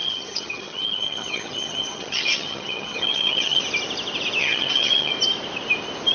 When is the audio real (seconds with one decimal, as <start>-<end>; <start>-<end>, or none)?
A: 3.6-4.4; 5.1-6.1